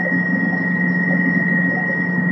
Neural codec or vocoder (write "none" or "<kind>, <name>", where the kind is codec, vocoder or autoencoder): none